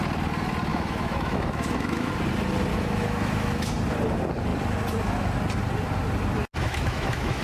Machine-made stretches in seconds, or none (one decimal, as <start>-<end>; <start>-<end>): 0.7-2.1; 2.7-3.7; 6.6-7.4